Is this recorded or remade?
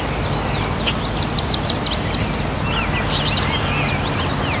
recorded